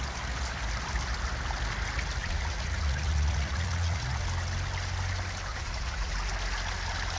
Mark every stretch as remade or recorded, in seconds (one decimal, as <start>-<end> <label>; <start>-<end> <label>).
0.0-2.2 recorded; 2.2-4.2 remade; 4.2-5.5 recorded; 5.5-6.1 remade; 6.1-7.2 recorded